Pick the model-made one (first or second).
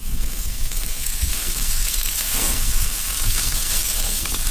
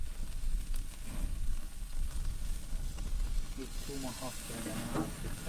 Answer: first